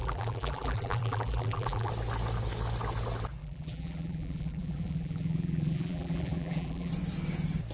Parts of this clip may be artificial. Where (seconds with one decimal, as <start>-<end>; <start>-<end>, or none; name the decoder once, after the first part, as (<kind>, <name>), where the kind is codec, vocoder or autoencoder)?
0.0-1.9 (vocoder, BigVGAN v2); 3.4-6.9